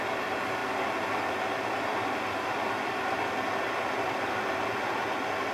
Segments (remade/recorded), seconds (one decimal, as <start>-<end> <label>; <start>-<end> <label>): 0.0-5.5 recorded

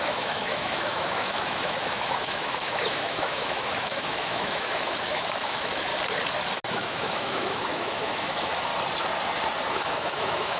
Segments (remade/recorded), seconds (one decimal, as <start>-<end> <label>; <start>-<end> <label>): 0.0-5.9 remade; 5.9-6.7 recorded; 6.7-8.7 remade; 8.7-9.7 recorded; 9.7-10.6 remade